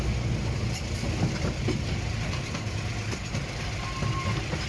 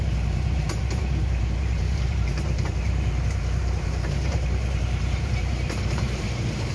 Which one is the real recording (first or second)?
first